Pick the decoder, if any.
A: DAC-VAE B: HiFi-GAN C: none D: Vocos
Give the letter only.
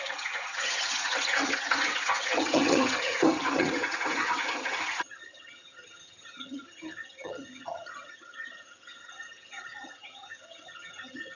B